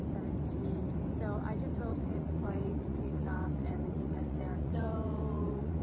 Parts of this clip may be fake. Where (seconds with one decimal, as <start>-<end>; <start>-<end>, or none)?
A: 1.9-5.8